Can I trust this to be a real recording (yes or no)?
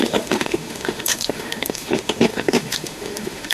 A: no